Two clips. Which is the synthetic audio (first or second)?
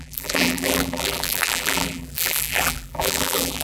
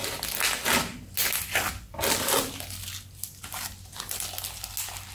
first